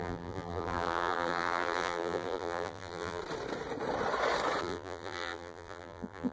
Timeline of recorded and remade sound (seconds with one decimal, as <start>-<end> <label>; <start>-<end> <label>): 0.0-3.2 remade; 3.2-4.6 recorded; 4.6-6.3 remade